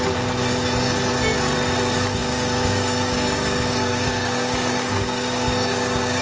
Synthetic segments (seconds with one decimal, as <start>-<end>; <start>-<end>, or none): 2.2-6.2

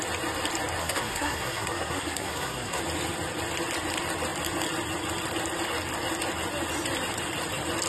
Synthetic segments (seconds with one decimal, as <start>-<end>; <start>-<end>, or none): 0.8-2.8

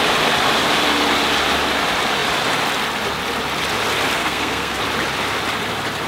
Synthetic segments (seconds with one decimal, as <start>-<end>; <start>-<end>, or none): 4.2-4.8

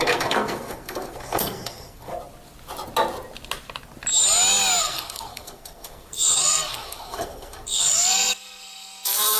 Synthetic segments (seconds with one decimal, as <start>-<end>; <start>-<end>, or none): 0.0-2.1; 4.8-9.4

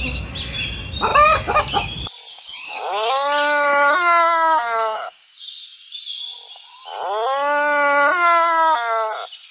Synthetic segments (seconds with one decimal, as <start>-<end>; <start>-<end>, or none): 2.3-5.5

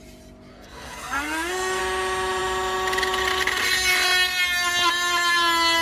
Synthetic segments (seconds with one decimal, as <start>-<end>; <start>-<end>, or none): 0.5-1.8